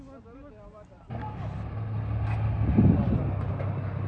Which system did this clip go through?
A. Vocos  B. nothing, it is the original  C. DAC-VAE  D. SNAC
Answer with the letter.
B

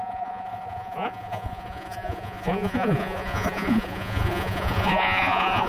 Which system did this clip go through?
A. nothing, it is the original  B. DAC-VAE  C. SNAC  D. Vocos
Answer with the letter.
D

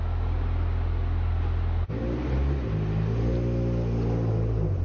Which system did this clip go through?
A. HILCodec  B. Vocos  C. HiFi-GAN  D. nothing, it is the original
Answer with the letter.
D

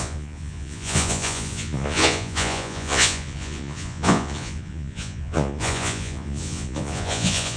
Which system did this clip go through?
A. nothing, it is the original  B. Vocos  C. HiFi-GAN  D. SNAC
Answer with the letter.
B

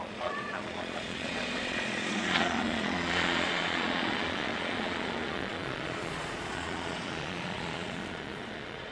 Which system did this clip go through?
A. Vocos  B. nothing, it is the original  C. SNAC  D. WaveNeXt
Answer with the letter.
A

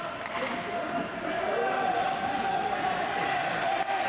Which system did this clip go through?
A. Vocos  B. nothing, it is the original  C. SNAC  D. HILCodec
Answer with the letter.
B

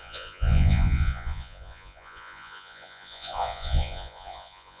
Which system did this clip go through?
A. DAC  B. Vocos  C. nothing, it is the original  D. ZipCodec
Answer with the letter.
B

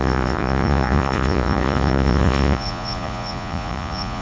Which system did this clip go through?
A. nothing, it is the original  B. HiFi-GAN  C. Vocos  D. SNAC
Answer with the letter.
C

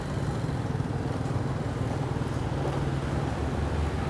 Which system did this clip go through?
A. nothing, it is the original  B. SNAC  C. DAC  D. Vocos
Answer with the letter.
A